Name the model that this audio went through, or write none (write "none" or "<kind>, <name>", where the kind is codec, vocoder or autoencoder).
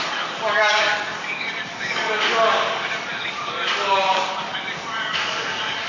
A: codec, DAC